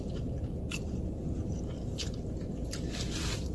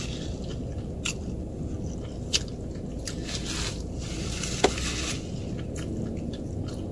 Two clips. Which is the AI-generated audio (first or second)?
first